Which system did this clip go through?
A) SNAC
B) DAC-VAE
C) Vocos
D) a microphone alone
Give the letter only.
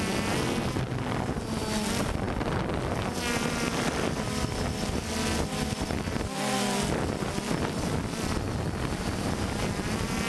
D